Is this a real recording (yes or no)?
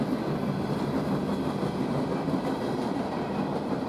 yes